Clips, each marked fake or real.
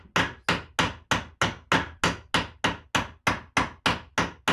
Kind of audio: real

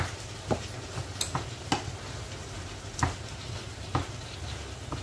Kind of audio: real